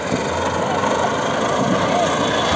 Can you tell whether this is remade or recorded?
recorded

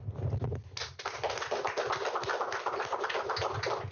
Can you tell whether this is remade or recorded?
recorded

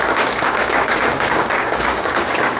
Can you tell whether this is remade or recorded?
remade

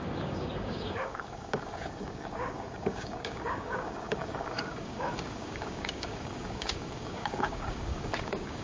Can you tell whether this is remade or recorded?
remade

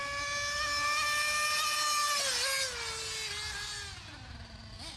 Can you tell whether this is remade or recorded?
recorded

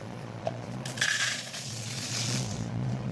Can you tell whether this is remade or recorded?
remade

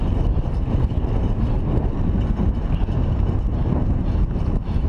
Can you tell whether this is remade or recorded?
recorded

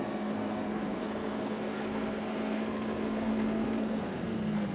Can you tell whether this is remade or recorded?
remade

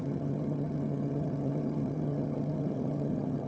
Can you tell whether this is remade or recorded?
remade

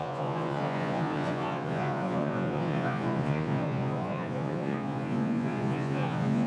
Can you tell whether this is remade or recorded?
remade